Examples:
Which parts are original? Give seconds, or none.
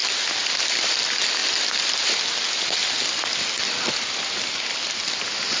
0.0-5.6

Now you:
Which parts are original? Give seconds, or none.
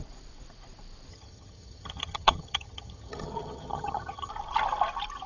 0.0-1.1; 4.3-5.3